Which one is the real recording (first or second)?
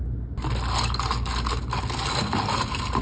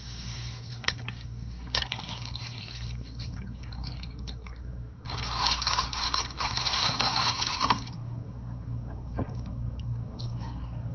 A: first